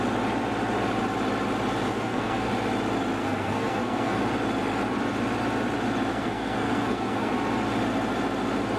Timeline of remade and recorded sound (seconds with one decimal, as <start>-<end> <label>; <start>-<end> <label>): 0.0-1.9 recorded; 1.9-2.5 remade; 2.5-3.2 recorded; 3.2-4.2 remade; 4.2-6.1 recorded; 6.1-7.3 remade; 7.3-8.8 recorded